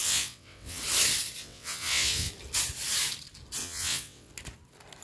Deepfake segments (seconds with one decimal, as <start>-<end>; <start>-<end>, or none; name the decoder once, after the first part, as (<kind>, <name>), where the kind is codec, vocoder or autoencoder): 0.0-0.8 (vocoder, WaveNeXt); 1.4-2.3; 3.6-4.3